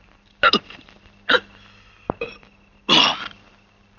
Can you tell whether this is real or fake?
real